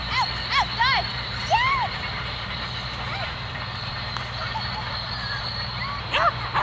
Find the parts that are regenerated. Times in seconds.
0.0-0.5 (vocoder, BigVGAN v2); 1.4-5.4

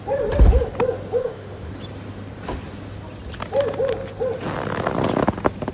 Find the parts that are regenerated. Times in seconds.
1.2-1.7 (autoencoder, DAC-VAE)

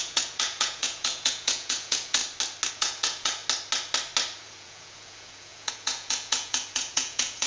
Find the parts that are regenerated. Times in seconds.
0.0-2.2 (vocoder, Vocos); 2.7-3.4; 4.4-7.5

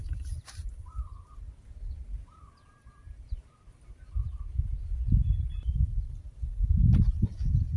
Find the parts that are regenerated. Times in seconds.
0.0-1.3 (vocoder, BigVGAN v2); 2.0-5.9

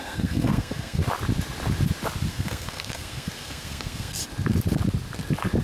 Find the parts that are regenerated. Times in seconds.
0.0-1.0 (codec, SNAC); 2.3-4.2

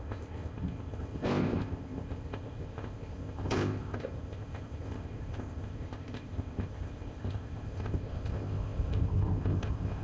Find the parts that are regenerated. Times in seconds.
0.0-10.0 (codec, ZipCodec)

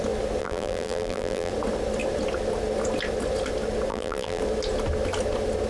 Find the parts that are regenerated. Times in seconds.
0.4-1.5 (vocoder, BigVGAN v2); 3.9-4.4

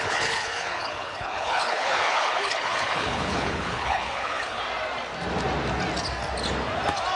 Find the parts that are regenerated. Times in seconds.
0.0-4.6 (codec, HILCodec)